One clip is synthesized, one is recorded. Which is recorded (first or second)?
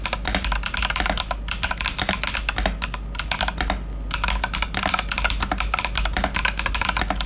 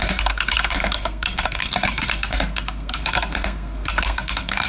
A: first